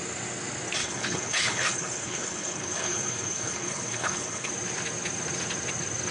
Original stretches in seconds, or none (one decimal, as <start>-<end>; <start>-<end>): 0.0-0.8; 4.5-6.1